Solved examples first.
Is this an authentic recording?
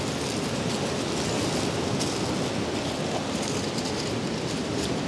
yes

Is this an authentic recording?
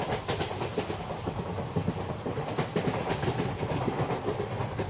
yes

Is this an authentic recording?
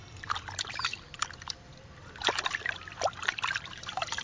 no